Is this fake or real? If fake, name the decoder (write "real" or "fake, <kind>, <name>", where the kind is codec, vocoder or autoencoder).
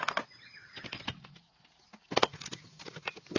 real